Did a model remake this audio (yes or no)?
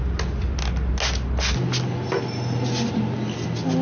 no